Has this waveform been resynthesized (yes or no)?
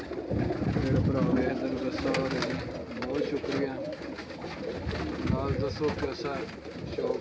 no